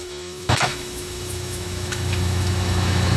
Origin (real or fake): fake